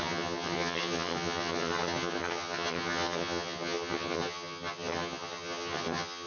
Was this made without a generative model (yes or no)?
no